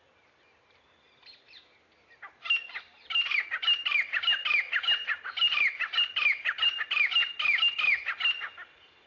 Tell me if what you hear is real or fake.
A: fake